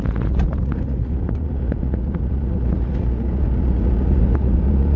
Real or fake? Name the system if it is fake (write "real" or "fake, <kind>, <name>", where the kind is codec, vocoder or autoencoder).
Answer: fake, vocoder, Vocos